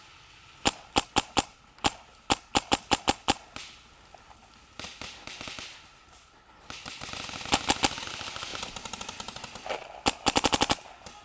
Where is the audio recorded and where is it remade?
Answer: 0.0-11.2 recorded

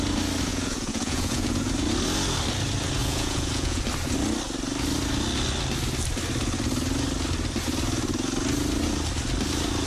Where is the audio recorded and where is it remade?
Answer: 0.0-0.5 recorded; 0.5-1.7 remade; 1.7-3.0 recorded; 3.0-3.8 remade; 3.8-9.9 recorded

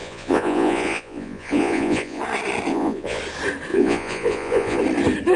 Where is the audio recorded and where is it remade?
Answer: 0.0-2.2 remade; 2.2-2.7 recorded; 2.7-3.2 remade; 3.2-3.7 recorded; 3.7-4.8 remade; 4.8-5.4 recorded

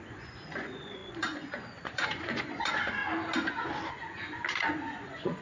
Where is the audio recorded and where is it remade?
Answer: 0.0-3.0 remade; 3.0-3.9 recorded; 3.9-5.4 remade

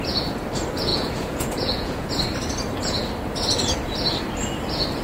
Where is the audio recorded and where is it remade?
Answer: 0.0-0.9 recorded; 0.9-2.1 remade; 2.1-5.0 recorded

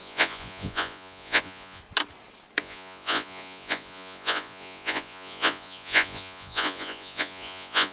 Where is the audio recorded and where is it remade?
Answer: 0.0-1.8 remade; 1.8-2.6 recorded; 2.6-7.9 remade

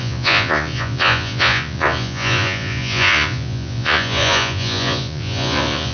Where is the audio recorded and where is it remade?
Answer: 0.0-5.9 remade

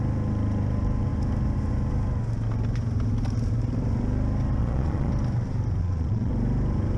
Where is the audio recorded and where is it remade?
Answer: 0.0-4.6 recorded; 4.6-5.1 remade; 5.1-5.8 recorded; 5.8-6.3 remade; 6.3-7.0 recorded